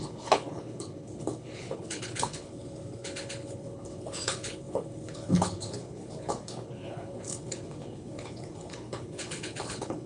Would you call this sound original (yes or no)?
no